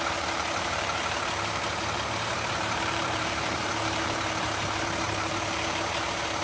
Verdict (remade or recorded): remade